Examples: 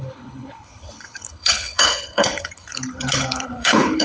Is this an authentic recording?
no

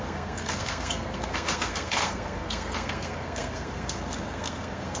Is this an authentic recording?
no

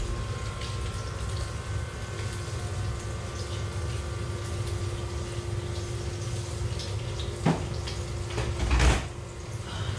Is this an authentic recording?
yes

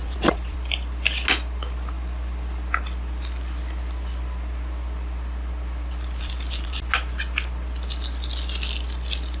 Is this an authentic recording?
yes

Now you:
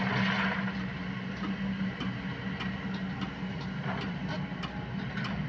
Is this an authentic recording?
yes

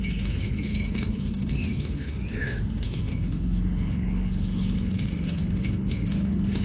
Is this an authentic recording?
no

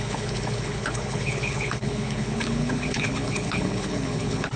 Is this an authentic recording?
no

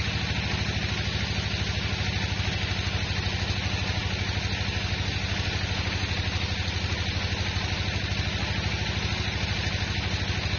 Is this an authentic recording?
yes